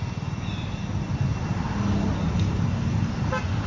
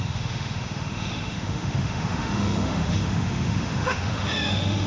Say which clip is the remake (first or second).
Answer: second